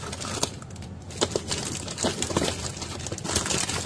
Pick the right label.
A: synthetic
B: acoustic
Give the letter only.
B